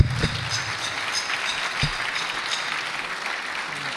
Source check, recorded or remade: recorded